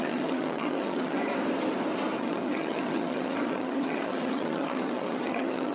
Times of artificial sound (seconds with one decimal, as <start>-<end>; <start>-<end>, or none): 0.0-1.2; 2.2-5.7